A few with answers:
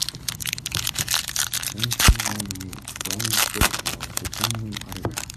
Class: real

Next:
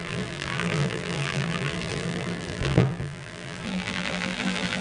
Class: fake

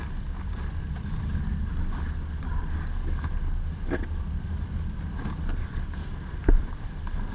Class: real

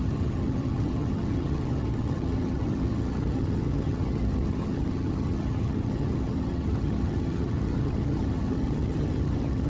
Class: fake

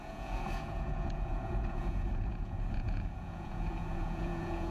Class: fake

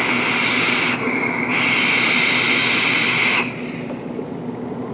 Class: real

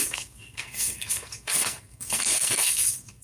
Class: fake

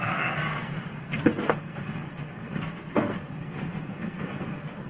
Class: fake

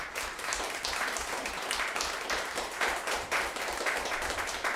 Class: fake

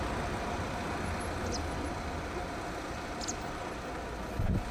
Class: real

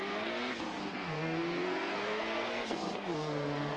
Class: fake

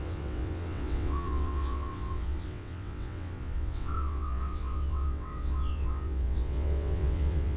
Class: fake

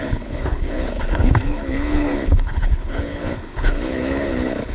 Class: fake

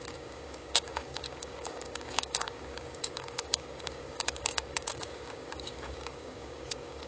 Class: fake